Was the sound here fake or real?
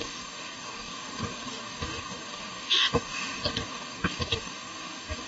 fake